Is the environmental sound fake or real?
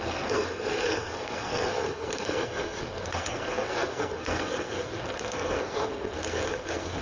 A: fake